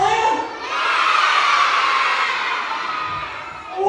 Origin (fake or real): real